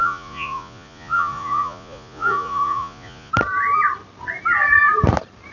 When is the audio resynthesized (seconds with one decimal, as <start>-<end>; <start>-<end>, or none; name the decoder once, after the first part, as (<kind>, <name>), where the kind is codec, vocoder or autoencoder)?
0.0-3.3 (vocoder, Vocos)